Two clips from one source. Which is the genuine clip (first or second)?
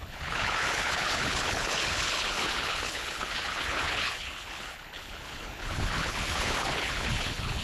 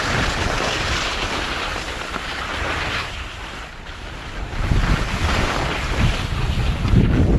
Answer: second